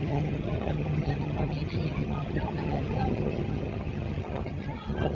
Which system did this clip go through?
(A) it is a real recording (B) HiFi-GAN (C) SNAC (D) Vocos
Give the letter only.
B